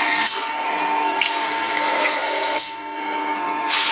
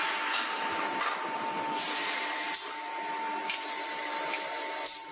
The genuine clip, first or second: second